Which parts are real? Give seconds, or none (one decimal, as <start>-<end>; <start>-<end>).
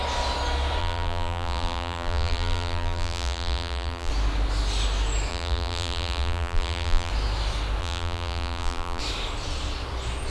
0.0-0.8; 4.1-5.3; 7.1-7.8; 9.0-10.3